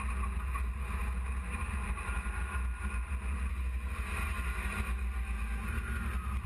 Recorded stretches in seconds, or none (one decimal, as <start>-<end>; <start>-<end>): 0.0-6.5